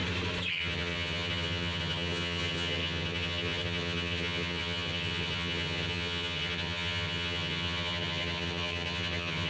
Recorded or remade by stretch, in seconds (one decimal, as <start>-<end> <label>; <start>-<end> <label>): 0.0-0.5 recorded; 0.5-9.5 remade